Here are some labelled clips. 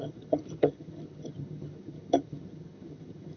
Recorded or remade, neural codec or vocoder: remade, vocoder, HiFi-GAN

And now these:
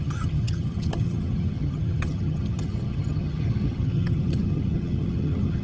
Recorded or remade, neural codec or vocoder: remade, vocoder, HiFi-GAN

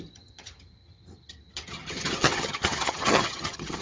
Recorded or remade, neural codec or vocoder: remade, vocoder, HiFi-GAN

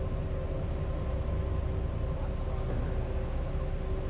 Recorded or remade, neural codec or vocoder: recorded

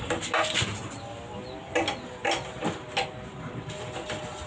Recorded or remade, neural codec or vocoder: recorded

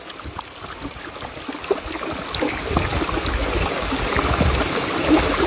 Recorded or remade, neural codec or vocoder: recorded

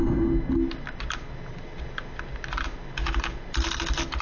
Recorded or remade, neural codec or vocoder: recorded